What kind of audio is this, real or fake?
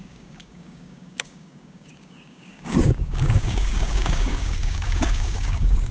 fake